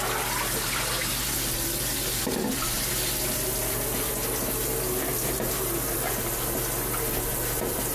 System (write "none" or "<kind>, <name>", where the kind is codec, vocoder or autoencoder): vocoder, BigVGAN v2